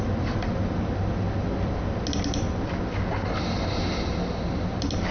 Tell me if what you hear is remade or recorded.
recorded